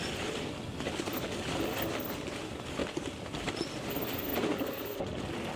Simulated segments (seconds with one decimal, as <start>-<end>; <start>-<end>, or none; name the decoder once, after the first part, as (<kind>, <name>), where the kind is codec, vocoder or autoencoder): 0.0-2.8 (vocoder, BigVGAN v2); 3.5-5.6